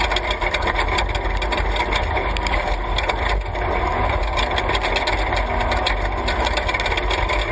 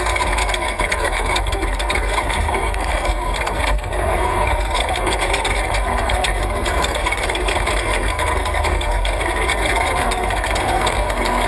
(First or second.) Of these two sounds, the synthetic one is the second